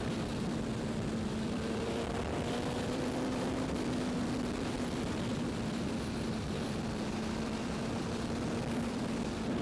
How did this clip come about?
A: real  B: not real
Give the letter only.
B